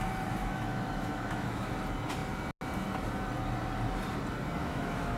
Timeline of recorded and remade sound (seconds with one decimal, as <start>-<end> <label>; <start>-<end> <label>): 0.0-0.4 recorded; 0.4-1.7 remade; 1.7-4.6 recorded; 4.6-5.2 remade